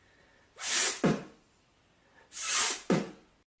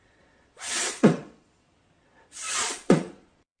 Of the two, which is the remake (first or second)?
second